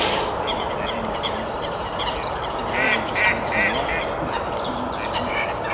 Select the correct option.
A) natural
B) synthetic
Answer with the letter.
A